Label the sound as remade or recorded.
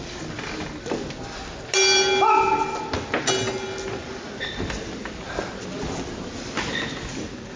recorded